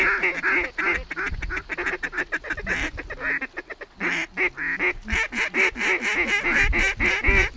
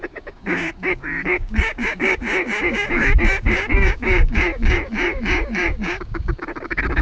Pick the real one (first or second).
first